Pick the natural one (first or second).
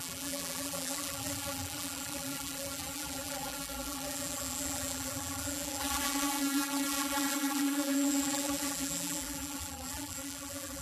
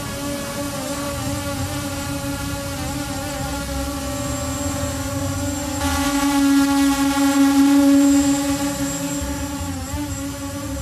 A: second